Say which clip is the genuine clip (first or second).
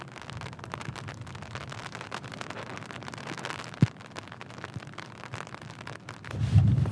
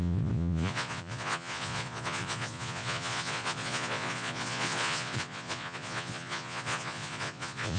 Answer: first